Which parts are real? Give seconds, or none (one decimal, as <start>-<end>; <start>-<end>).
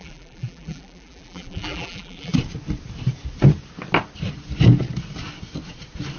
2.3-6.2